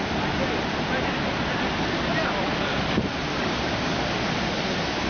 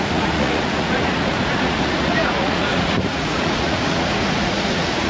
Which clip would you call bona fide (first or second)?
first